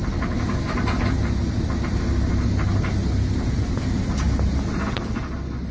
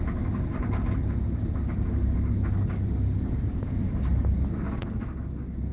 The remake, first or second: second